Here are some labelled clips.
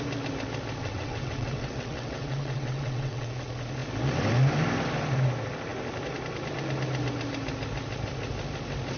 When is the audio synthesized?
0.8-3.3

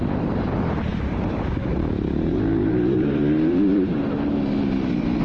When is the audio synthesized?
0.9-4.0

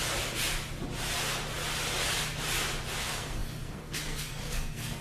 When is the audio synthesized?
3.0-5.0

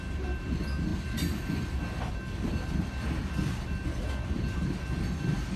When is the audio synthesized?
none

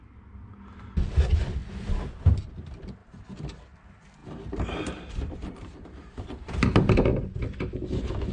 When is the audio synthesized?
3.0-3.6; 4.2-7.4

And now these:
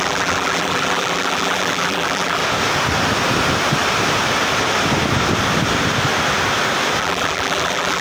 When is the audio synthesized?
0.0-2.4; 7.0-8.0